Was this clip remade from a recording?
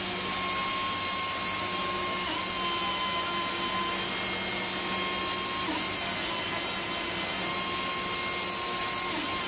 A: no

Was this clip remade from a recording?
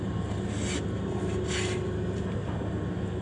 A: no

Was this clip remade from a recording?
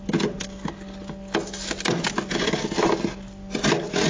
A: no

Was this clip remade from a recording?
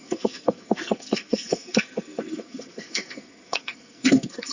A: yes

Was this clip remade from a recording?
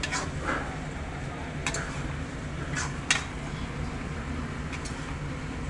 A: no